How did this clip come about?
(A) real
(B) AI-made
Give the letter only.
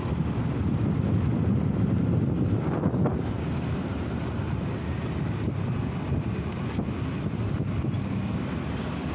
A